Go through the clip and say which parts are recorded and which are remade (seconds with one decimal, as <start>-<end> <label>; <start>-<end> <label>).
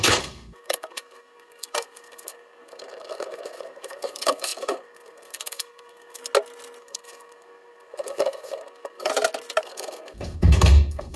0.0-6.2 remade; 6.2-6.8 recorded; 6.8-9.1 remade; 9.1-9.6 recorded; 9.6-11.2 remade